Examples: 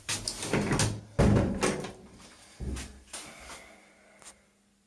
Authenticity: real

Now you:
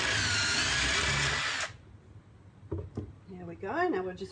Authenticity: real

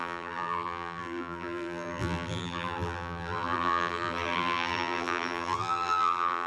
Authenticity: fake